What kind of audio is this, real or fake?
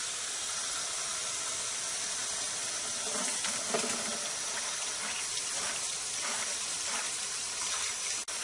real